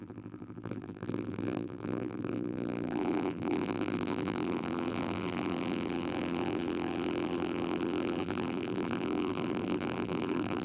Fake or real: fake